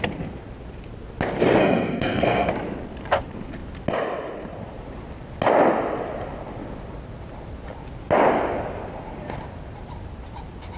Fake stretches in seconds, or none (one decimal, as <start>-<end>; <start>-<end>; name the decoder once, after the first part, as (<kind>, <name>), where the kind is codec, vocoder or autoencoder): 1.6-2.5 (codec, SNAC)